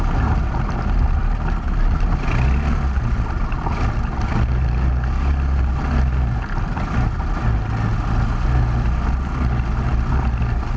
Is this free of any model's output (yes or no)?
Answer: yes